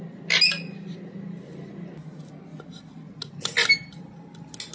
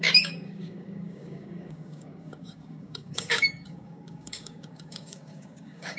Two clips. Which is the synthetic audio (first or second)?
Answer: second